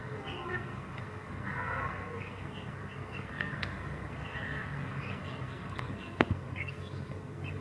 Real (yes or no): no